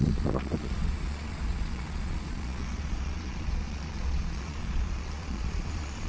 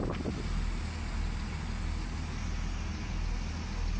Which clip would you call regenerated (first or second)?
first